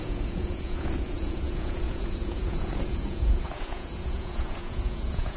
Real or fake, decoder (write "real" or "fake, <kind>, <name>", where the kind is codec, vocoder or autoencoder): fake, vocoder, Vocos